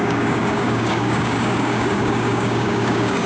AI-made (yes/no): yes